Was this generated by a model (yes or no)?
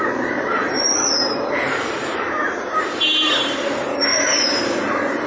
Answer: yes